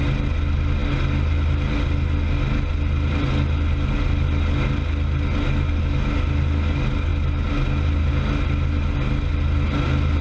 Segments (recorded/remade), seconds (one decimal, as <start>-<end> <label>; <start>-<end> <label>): 0.0-10.2 recorded